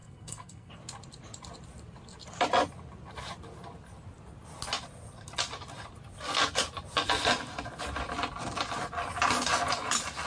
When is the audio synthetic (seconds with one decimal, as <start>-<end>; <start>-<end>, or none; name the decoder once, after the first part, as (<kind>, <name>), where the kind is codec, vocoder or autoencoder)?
0.0-0.7 (codec, SNAC)